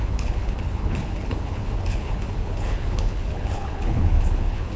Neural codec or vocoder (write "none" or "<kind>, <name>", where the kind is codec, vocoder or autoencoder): codec, HILCodec